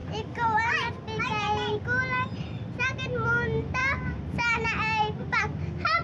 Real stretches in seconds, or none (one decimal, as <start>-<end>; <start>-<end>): 0.0-6.0